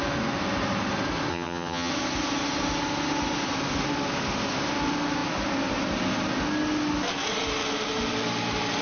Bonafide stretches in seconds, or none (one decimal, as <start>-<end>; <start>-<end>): 0.0-1.3; 1.9-8.8